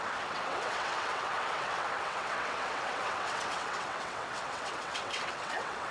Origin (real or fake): fake